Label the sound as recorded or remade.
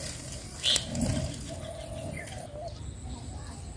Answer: recorded